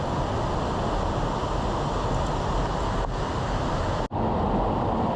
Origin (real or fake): real